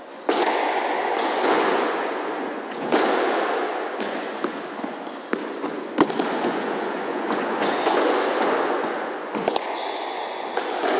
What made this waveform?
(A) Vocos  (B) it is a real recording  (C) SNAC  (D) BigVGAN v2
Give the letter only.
A